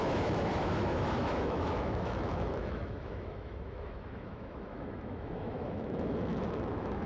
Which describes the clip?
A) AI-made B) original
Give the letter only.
A